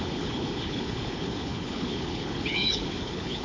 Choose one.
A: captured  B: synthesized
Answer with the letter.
B